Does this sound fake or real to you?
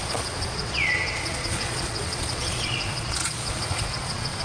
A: fake